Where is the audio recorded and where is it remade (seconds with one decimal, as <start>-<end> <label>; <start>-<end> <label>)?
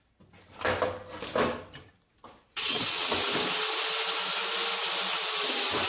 0.0-2.5 recorded; 2.5-3.1 remade; 3.1-5.9 recorded